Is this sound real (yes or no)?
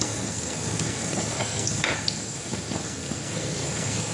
no